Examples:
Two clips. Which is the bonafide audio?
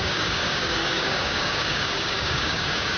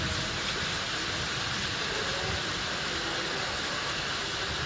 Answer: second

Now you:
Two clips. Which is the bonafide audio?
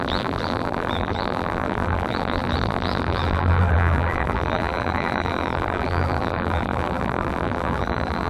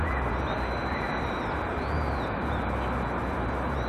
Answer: second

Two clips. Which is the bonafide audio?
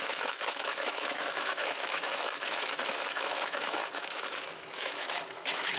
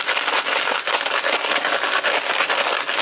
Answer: second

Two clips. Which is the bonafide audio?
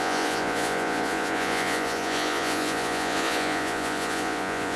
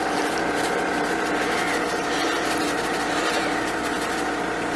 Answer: second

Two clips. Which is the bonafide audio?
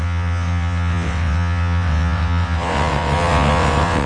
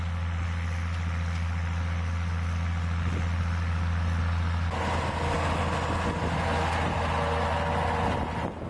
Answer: second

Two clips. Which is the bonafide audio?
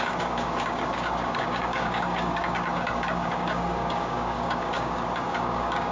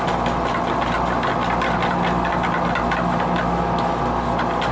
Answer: second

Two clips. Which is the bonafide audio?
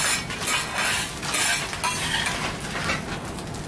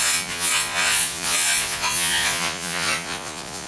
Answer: first